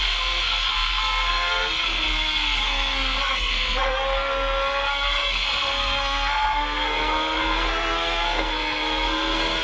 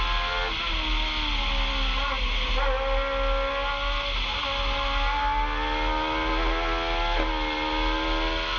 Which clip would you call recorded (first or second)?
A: second